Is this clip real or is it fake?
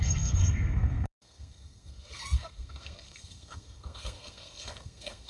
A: fake